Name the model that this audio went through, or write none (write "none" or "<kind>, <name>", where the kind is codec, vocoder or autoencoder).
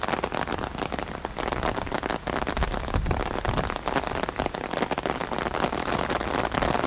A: none